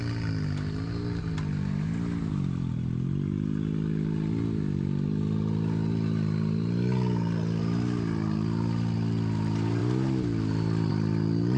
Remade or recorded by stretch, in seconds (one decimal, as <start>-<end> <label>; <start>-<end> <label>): 0.0-11.6 recorded